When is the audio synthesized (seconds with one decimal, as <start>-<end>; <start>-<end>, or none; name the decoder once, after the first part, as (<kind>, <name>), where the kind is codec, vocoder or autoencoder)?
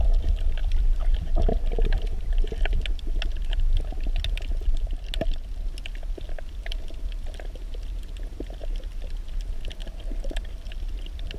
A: 0.6-1.2 (vocoder, BigVGAN v2); 9.8-10.7